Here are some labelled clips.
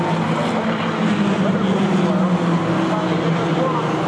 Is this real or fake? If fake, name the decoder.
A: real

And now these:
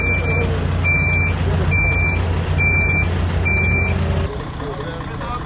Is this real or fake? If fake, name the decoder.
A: real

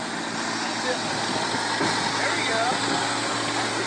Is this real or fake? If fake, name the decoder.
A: real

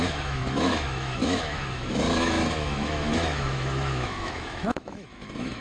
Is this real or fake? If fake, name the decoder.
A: fake, autoencoder, DAC-VAE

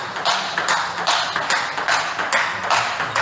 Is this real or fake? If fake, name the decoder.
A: real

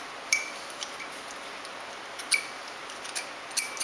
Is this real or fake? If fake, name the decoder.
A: real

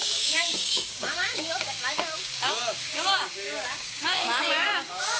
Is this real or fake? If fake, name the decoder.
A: fake, codec, DAC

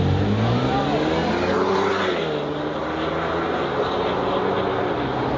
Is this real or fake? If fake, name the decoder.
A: real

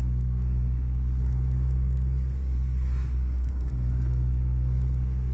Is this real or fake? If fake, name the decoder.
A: fake, codec, SNAC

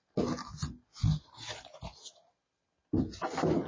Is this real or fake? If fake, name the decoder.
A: real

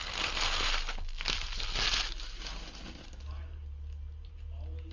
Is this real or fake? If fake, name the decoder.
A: real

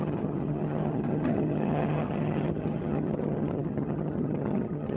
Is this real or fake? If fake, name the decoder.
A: fake, vocoder, HiFi-GAN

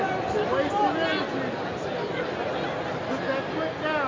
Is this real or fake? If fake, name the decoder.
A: real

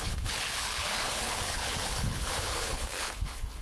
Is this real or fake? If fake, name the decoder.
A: fake, codec, HILCodec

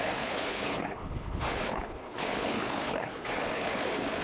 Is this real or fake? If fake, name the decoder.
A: fake, codec, HILCodec